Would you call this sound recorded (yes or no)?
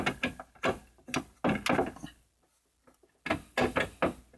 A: yes